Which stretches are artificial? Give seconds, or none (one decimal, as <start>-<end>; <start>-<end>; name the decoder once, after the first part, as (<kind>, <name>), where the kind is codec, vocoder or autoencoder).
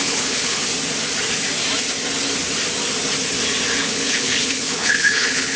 0.0-0.6 (codec, HILCodec); 3.8-5.6